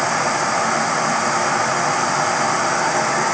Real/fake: real